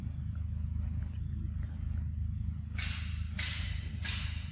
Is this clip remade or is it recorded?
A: recorded